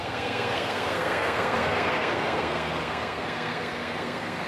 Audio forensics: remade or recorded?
remade